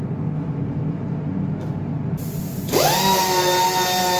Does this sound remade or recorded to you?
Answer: recorded